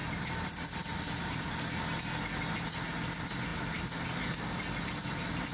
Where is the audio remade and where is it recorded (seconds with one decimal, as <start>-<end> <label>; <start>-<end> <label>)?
0.0-5.5 recorded